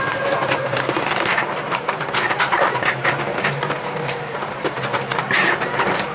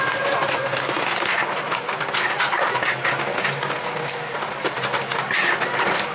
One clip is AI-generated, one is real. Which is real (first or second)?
second